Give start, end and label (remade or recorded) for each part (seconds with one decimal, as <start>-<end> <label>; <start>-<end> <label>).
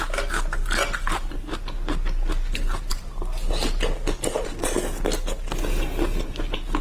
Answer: 0.0-6.8 recorded